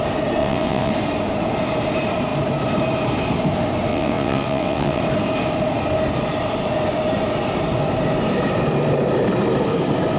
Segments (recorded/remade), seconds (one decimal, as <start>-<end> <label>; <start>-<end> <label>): 0.0-0.4 recorded; 0.4-0.9 remade; 0.9-3.9 recorded; 3.9-5.0 remade; 5.0-10.2 recorded